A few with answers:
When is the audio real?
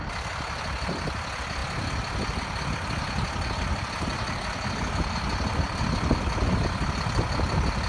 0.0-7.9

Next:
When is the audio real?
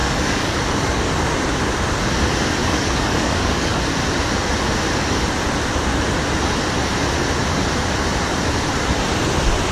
1.2-2.6; 3.8-9.7